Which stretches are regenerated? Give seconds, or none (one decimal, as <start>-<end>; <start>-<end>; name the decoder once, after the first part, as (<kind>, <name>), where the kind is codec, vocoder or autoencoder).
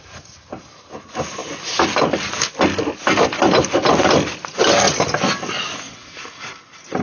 3.0-3.8 (vocoder, BigVGAN v2)